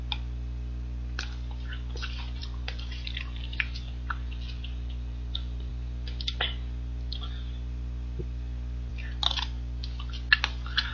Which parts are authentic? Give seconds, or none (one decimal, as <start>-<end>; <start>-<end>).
0.0-2.4; 5.7-10.9